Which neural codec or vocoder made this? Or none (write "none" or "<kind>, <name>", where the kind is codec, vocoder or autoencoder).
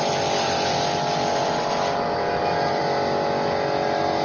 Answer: none